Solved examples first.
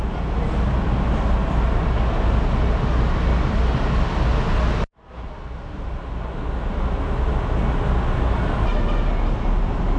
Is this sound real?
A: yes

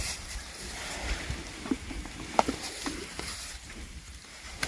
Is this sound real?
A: no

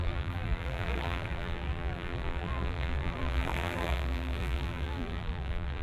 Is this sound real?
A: no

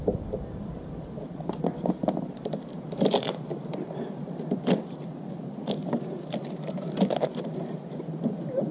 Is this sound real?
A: no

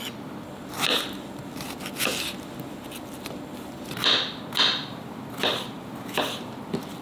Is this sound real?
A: yes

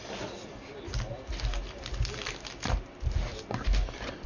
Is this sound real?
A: yes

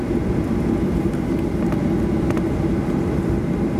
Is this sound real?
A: yes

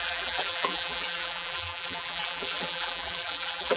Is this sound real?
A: no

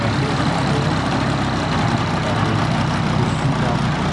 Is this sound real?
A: yes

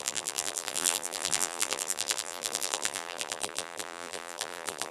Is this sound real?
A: no